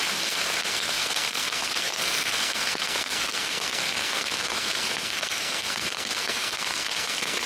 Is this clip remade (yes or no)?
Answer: yes